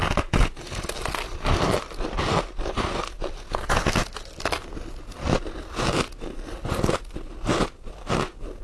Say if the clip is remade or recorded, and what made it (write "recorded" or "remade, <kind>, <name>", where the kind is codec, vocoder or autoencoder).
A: recorded